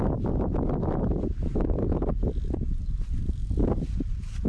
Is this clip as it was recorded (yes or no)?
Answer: yes